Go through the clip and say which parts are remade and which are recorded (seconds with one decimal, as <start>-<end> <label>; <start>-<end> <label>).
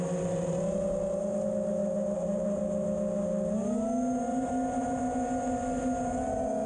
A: 0.0-1.8 recorded; 1.8-2.6 remade; 2.6-4.3 recorded; 4.3-5.0 remade; 5.0-6.7 recorded